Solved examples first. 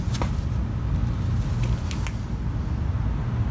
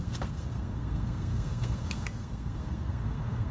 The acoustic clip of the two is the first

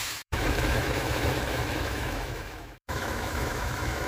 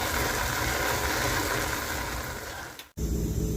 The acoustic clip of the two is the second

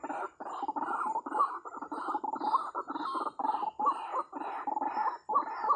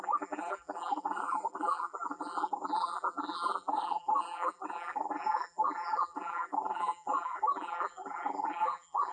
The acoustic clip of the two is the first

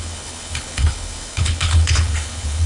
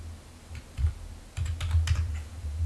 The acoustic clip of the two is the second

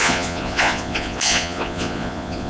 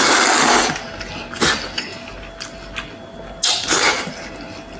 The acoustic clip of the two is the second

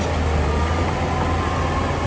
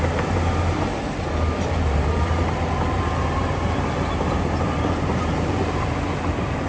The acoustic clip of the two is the first